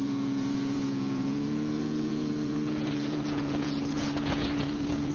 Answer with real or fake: fake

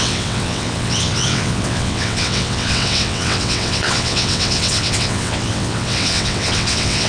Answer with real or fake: fake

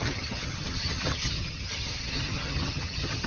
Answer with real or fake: fake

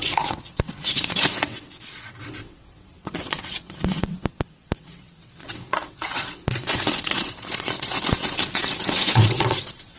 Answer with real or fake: fake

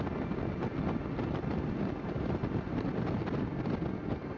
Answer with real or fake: real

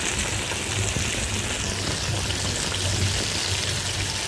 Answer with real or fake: real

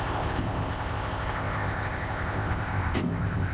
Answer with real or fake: fake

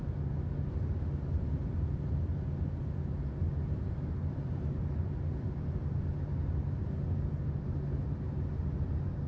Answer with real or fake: real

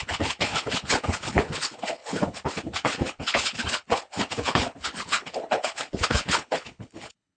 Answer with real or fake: fake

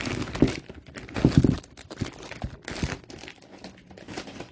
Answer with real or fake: real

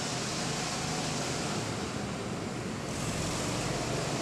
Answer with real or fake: real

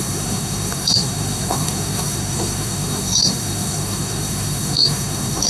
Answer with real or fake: fake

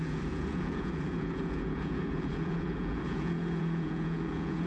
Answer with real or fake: fake